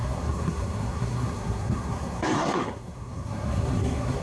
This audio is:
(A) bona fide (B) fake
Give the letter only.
B